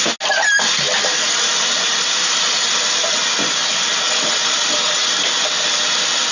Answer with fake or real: real